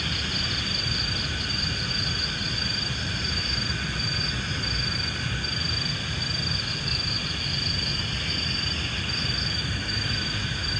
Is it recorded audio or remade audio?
recorded